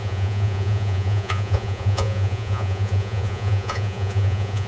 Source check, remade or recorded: remade